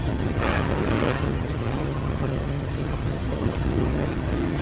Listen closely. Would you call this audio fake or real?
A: fake